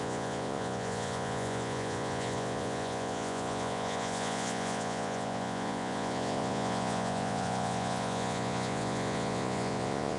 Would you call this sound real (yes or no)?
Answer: no